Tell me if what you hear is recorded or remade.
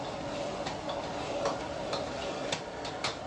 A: remade